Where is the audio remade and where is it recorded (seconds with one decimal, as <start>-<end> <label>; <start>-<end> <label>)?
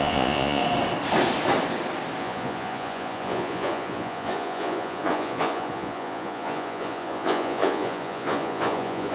0.0-0.6 remade; 0.6-2.2 recorded; 2.2-9.1 remade